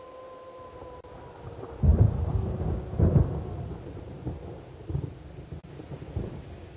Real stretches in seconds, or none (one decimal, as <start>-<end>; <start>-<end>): 0.0-6.8

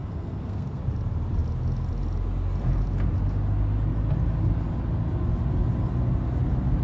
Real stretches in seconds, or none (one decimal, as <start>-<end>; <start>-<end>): 0.8-6.8

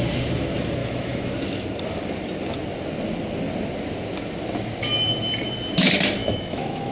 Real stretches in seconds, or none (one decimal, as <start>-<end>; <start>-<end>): 0.0-0.8; 1.3-6.2

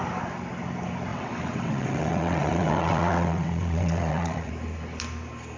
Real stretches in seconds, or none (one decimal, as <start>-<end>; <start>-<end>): 0.0-1.1; 4.5-5.6

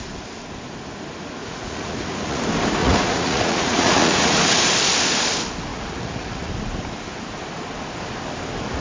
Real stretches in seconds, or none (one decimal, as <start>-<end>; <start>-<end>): 0.0-1.4; 2.4-2.8; 4.4-5.7; 6.5-8.8

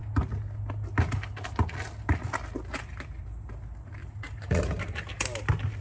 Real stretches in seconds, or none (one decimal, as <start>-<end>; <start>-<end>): 0.0-4.0; 4.6-5.8

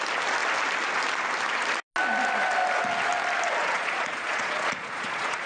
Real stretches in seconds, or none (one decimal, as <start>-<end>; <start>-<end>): 0.0-3.6